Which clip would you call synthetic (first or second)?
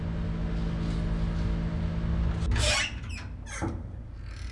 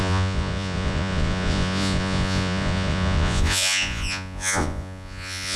second